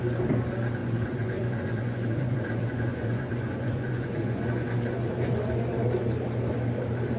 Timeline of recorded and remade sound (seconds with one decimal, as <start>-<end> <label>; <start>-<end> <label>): 0.0-0.8 recorded; 0.8-5.1 remade; 5.1-7.2 recorded